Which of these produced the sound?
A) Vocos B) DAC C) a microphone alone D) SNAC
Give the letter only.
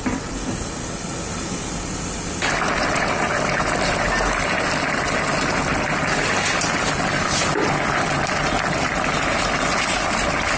C